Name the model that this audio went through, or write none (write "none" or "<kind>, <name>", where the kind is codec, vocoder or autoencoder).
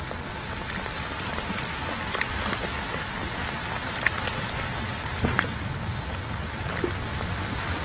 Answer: none